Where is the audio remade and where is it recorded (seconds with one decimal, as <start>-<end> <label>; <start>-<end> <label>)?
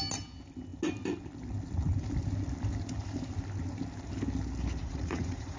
0.0-4.8 recorded; 4.8-5.6 remade